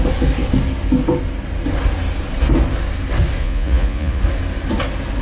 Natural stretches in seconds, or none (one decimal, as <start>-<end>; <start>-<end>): 0.0-3.4; 4.2-5.2